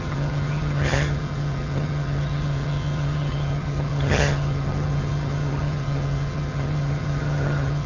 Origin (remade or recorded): remade